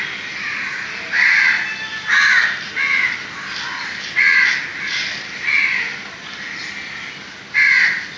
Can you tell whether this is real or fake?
real